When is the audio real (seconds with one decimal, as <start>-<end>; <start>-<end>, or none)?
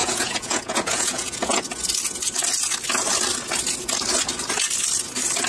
1.6-5.5